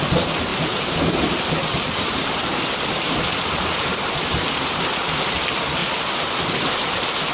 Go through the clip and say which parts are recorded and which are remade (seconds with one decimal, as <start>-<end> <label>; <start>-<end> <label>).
0.0-0.5 recorded; 0.5-4.9 remade; 4.9-5.8 recorded; 5.8-7.3 remade